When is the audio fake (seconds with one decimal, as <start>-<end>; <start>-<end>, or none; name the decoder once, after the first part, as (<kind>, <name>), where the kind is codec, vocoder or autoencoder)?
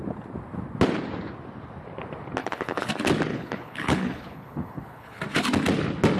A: 2.4-2.9 (codec, HILCodec); 3.3-5.2